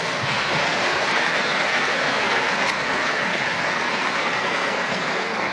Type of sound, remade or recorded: remade